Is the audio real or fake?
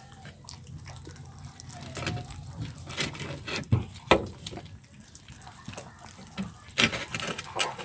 real